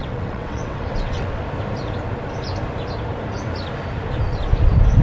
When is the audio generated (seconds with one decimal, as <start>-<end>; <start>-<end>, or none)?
0.0-1.4